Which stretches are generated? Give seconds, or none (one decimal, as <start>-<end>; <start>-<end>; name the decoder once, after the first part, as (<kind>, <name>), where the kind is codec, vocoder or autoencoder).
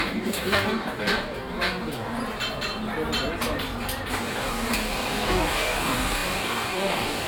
0.0-2.2 (codec, DAC); 4.2-7.3